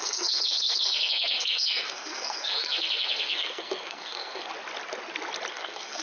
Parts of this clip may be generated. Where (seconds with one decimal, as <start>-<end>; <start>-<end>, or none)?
0.0-4.5; 5.5-6.0